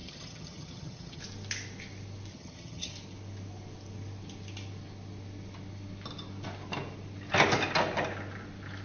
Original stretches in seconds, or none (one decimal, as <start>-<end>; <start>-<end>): 1.2-2.3; 2.9-8.8